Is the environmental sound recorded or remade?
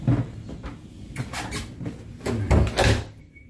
recorded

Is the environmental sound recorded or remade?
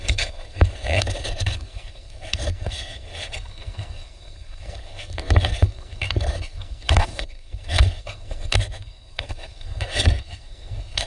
remade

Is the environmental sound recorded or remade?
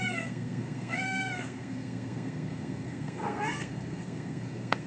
remade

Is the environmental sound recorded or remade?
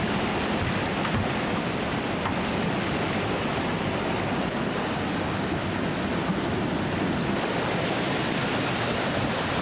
recorded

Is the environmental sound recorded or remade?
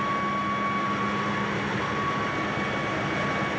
recorded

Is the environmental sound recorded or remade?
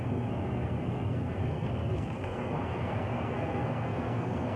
remade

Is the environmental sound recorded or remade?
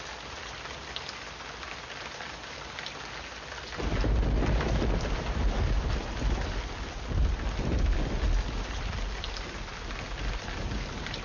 recorded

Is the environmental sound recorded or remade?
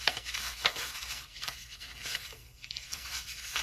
remade